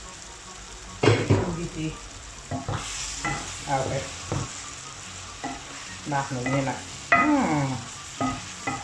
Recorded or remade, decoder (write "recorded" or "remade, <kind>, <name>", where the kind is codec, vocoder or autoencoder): recorded